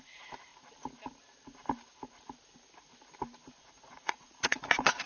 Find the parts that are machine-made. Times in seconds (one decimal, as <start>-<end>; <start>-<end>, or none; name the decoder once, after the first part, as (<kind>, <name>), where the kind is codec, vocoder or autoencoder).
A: 0.0-0.5 (vocoder, Vocos); 3.6-5.1